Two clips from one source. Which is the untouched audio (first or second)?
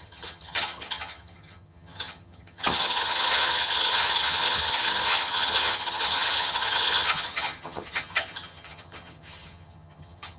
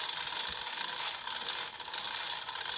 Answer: second